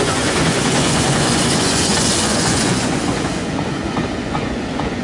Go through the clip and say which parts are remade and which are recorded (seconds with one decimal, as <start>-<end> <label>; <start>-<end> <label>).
0.0-5.0 remade